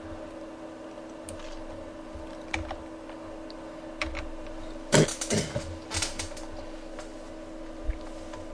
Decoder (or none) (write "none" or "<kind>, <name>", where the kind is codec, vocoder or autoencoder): none